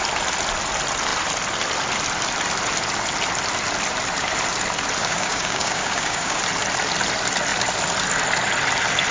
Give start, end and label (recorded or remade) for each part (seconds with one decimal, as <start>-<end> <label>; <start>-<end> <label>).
0.0-5.0 recorded; 5.0-6.4 remade; 6.4-9.1 recorded